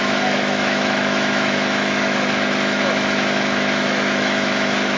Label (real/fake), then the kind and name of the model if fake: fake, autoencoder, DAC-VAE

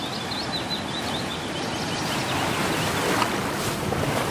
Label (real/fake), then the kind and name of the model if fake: real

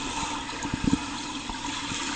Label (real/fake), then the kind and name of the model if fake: real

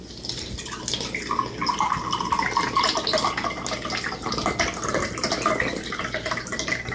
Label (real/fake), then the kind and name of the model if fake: real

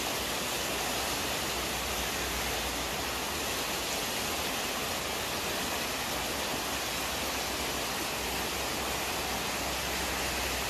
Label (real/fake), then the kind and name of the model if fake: real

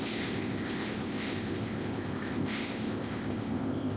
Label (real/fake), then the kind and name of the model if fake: fake, codec, ZipCodec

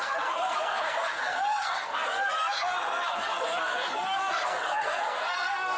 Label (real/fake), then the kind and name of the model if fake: fake, codec, SNAC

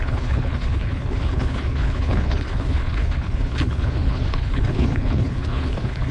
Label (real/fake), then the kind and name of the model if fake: fake, codec, HILCodec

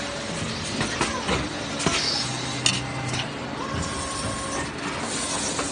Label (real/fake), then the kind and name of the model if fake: real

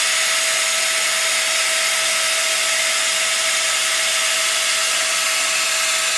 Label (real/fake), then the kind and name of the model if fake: real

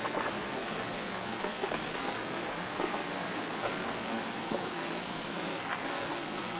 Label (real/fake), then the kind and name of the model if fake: fake, codec, SNAC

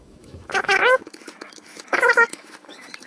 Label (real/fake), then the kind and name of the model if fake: fake, autoencoder, DAC-VAE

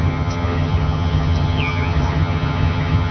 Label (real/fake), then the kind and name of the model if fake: fake, vocoder, HiFi-GAN